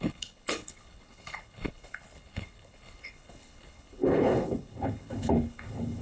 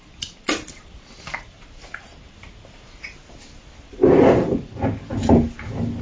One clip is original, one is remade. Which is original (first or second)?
second